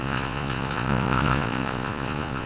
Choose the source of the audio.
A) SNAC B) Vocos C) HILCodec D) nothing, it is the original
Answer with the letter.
B